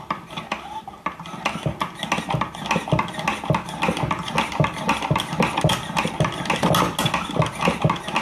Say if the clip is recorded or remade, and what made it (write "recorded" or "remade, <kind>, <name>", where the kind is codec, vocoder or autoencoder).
recorded